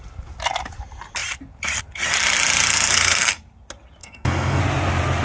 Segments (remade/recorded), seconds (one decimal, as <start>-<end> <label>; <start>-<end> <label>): 0.0-2.7 recorded; 2.7-3.4 remade; 3.4-4.0 recorded; 4.0-4.6 remade; 4.6-5.2 recorded